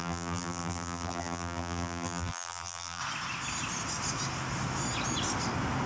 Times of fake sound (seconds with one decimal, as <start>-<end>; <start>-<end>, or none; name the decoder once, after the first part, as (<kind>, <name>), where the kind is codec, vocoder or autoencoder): 0.0-3.0 (vocoder, BigVGAN v2)